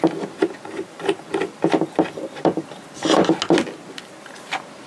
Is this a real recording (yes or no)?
yes